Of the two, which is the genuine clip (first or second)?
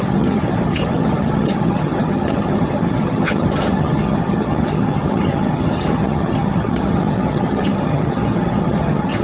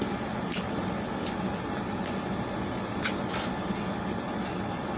second